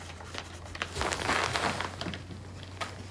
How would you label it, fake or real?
real